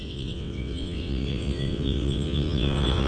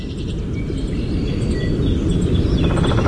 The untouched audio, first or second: second